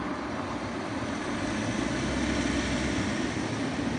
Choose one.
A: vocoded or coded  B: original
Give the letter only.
B